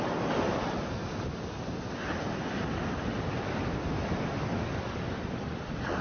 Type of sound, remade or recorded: recorded